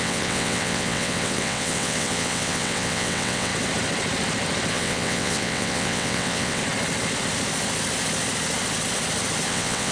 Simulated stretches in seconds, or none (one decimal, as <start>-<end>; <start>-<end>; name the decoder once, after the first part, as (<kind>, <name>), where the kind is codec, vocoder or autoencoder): 0.0-3.5 (vocoder, WaveNeXt); 4.7-6.6; 9.5-9.9

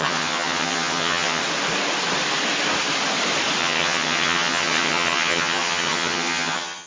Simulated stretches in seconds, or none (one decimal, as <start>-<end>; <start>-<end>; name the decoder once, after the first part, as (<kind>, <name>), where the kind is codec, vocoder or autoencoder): 0.0-1.4 (vocoder, HiFi-GAN); 3.6-6.9

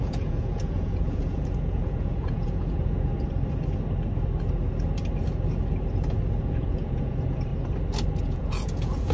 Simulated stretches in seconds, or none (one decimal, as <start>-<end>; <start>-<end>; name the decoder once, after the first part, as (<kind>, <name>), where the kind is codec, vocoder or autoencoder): 0.0-3.1 (vocoder, Vocos); 6.5-7.5; 8.2-9.1

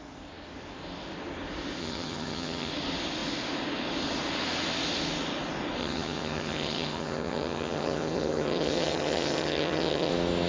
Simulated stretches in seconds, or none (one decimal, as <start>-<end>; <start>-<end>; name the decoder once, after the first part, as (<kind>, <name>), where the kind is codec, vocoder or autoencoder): 1.8-2.7 (vocoder, HiFi-GAN); 5.8-10.1

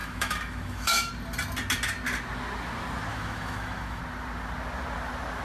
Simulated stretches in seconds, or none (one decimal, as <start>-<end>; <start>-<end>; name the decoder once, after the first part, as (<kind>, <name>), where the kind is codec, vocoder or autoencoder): 0.0-1.1 (autoencoder, DAC-VAE); 3.1-4.0

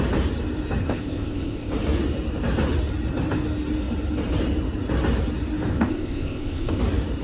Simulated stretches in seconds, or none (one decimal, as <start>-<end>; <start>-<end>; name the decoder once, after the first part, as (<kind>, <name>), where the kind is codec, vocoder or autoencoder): 0.8-1.7 (codec, ZipCodec); 5.7-6.8

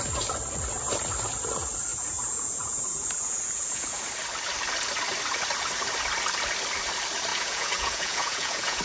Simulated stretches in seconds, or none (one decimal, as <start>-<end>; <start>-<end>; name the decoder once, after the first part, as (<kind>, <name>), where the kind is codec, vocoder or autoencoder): 1.9-4.0 (vocoder, Vocos); 7.3-8.8

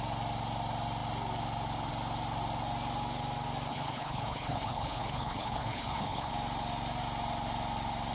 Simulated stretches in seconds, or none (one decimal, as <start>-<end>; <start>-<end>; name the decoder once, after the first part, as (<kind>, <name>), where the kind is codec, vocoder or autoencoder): 3.7-6.3 (codec, HILCodec)